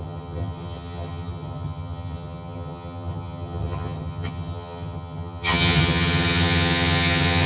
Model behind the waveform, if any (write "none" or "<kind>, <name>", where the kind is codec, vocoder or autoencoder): vocoder, HiFi-GAN